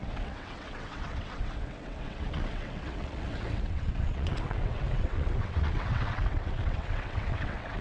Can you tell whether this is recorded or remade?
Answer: remade